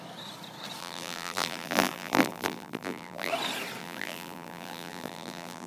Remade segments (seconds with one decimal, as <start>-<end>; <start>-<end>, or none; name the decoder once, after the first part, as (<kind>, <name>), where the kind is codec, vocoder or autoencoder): 0.8-3.3 (vocoder, BigVGAN v2); 3.8-5.7